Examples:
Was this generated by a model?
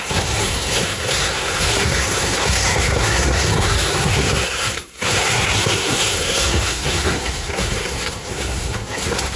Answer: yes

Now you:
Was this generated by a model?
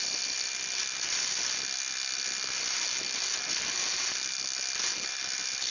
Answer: no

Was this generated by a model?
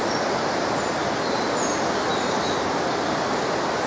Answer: no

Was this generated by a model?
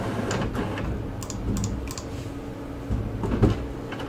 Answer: no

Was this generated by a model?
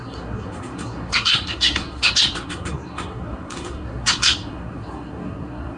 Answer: yes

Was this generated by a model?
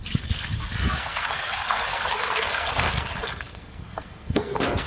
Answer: yes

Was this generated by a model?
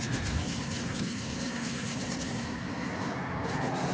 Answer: yes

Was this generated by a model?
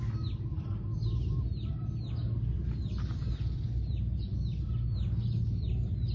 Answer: no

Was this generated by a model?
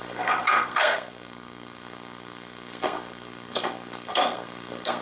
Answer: yes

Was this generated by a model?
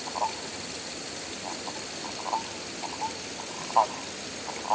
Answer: no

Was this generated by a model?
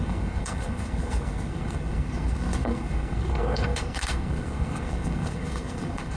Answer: yes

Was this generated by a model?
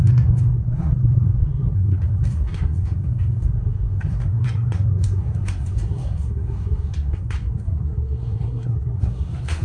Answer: yes